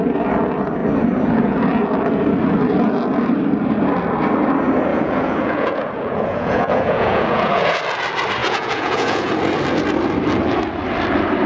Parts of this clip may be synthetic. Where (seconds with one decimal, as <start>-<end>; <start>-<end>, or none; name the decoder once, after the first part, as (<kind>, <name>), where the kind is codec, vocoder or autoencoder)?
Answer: 4.9-7.8 (vocoder, Vocos); 8.4-9.3